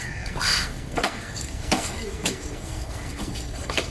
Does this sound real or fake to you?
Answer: fake